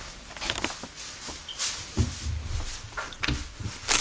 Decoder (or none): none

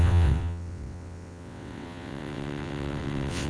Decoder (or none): vocoder, WaveNeXt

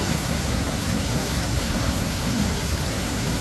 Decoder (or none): codec, SNAC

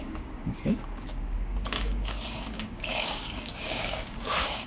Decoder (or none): codec, DAC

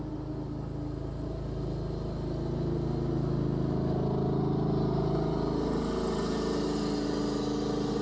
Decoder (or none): none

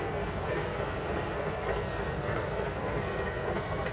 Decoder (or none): codec, SNAC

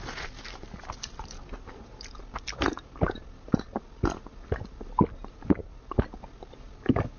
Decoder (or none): none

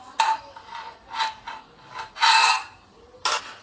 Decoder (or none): none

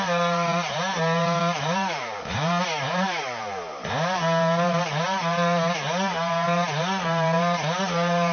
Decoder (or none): vocoder, BigVGAN v2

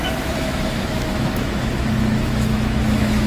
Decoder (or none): autoencoder, DAC-VAE